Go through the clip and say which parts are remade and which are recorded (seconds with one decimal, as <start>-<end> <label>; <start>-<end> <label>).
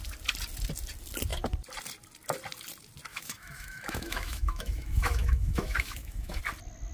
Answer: 0.0-3.1 recorded; 3.1-6.4 remade; 6.4-6.9 recorded